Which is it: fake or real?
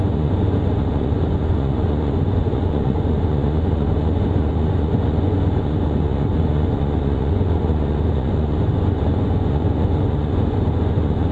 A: fake